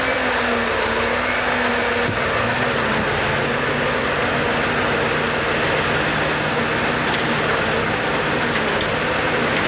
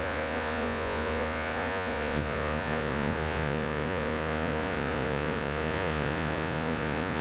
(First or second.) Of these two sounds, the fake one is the second